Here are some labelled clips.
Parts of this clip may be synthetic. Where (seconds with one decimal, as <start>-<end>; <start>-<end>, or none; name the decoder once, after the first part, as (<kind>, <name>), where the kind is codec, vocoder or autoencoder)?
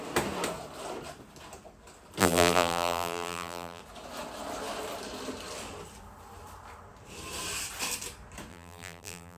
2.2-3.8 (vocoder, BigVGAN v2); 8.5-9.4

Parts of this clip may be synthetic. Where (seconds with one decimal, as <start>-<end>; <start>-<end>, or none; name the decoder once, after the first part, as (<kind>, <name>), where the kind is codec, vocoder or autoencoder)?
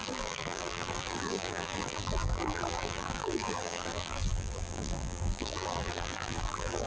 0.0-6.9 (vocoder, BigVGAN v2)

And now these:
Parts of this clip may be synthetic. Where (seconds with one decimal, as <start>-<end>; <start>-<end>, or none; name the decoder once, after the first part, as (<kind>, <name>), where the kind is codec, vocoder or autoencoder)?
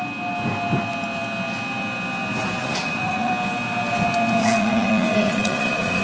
2.6-3.3 (vocoder, Vocos); 4.4-6.0